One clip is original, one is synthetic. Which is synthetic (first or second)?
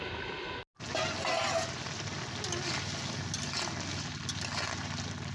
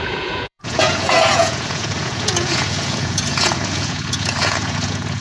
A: second